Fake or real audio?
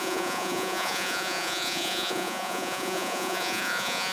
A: fake